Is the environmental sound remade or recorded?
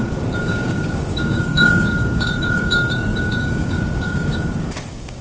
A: remade